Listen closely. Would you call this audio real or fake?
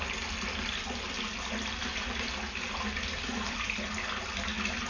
real